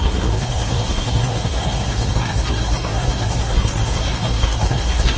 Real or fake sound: fake